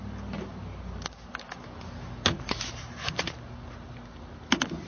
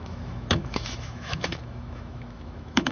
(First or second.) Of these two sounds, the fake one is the second